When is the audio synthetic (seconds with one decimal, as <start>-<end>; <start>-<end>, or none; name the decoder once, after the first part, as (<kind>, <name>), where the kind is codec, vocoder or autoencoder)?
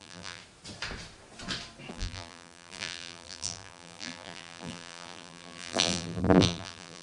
0.0-0.4 (vocoder, BigVGAN v2); 1.9-7.0